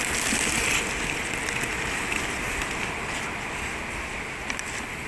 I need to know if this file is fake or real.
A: real